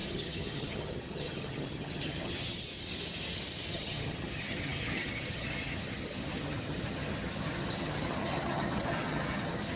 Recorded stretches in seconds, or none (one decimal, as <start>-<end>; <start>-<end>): 2.7-3.7